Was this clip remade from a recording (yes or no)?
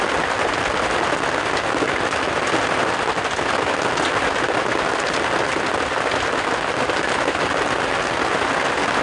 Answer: no